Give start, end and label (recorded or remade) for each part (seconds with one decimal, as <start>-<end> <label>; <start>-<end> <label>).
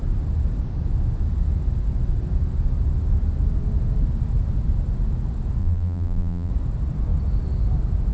0.0-5.6 recorded; 5.6-6.5 remade; 6.5-8.1 recorded